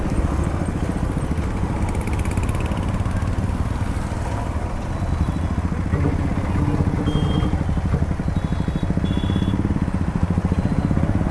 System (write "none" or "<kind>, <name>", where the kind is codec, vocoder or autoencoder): none